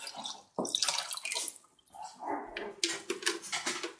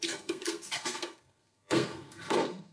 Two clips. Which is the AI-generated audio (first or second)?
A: second